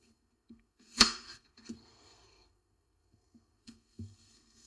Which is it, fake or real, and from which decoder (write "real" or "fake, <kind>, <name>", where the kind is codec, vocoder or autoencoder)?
fake, codec, SNAC